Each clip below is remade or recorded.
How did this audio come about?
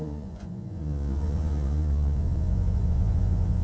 remade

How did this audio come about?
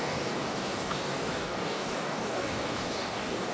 remade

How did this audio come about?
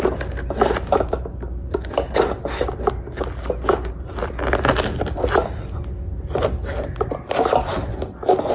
recorded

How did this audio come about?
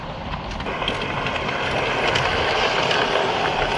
recorded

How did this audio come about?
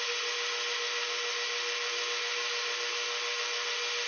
recorded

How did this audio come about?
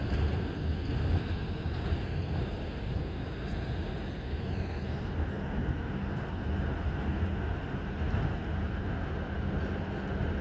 recorded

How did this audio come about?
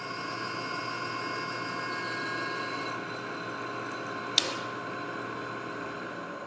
recorded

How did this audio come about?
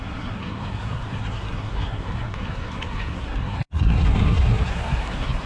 remade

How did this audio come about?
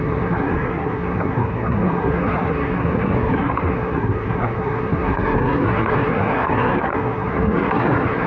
remade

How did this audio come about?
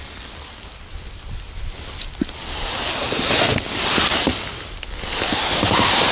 recorded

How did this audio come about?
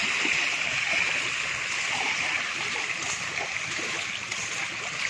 recorded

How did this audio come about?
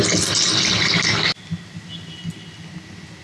recorded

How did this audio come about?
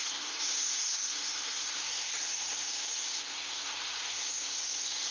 remade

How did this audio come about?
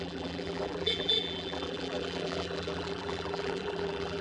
remade